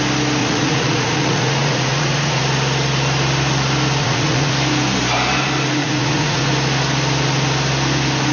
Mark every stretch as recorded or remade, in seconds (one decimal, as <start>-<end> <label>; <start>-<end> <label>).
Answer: 0.0-0.4 recorded; 0.4-2.4 remade; 2.4-4.0 recorded; 4.0-4.5 remade; 4.5-5.8 recorded; 5.8-6.5 remade; 6.5-8.3 recorded